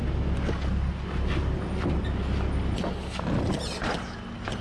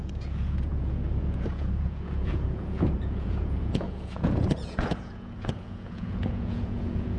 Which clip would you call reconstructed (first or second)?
second